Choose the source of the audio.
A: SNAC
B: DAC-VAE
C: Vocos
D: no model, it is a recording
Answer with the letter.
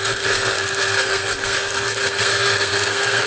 A